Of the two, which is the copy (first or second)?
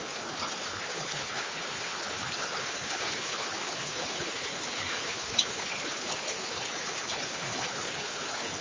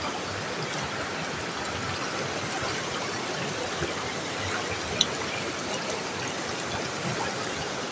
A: first